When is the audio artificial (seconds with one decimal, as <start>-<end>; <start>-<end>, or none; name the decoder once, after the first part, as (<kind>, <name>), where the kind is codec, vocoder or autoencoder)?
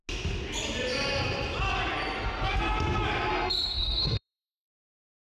3.3-4.8 (codec, SNAC)